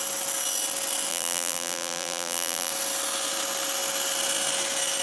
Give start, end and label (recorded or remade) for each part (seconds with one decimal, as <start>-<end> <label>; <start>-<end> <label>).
0.0-1.1 recorded; 1.1-2.7 remade; 2.7-5.0 recorded